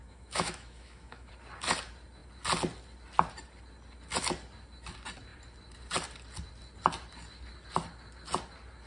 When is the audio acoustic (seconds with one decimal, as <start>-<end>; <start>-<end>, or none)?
1.3-8.9